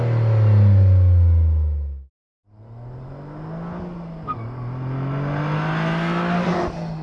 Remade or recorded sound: recorded